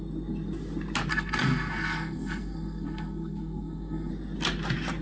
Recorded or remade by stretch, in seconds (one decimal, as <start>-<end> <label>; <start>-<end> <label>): 0.0-1.1 recorded; 1.1-4.1 remade; 4.1-5.0 recorded